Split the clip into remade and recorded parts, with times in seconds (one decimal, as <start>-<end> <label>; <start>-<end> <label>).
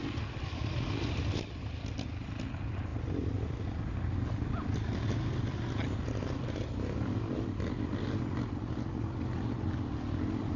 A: 0.0-10.6 recorded